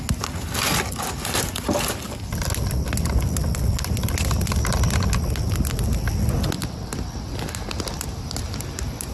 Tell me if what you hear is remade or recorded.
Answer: recorded